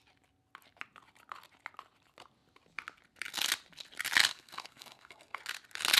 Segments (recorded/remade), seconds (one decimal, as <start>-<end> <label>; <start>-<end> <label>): 0.0-4.3 recorded; 4.3-5.4 remade; 5.4-6.0 recorded